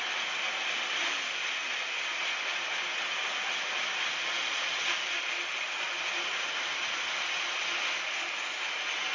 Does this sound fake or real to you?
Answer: real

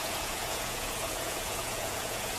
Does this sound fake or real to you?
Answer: fake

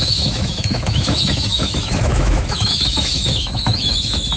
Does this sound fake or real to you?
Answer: fake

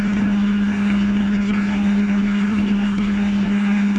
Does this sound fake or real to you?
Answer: fake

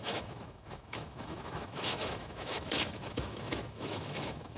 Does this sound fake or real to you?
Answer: fake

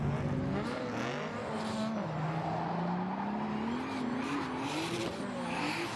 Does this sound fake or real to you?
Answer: real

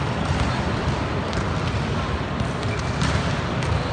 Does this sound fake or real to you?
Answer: real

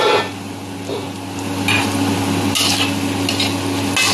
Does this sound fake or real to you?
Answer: real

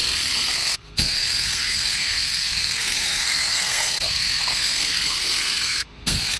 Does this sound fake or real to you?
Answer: fake